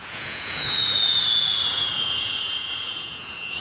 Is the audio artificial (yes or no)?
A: yes